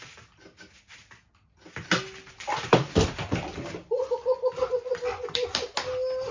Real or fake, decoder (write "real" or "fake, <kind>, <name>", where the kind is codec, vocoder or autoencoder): real